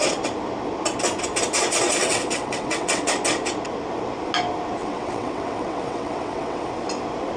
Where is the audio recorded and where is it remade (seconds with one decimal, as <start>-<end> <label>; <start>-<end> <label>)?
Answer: 0.0-2.0 recorded; 2.0-3.1 remade; 3.1-4.8 recorded; 4.8-6.7 remade; 6.7-7.4 recorded